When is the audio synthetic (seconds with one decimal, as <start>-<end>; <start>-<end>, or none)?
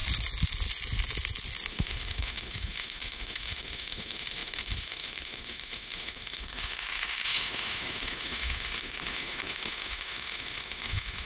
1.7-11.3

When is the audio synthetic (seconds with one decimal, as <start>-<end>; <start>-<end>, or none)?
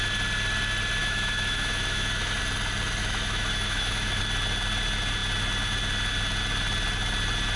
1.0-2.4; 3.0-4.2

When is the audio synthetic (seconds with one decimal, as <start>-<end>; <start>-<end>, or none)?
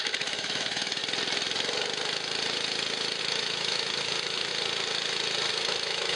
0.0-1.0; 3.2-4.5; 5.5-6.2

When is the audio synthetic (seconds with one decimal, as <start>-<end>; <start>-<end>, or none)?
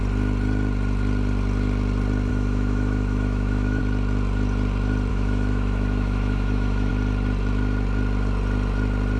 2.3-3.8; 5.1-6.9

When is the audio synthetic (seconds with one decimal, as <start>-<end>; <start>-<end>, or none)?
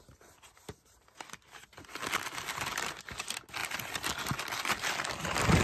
none